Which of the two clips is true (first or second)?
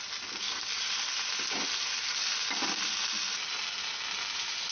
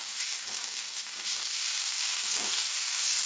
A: first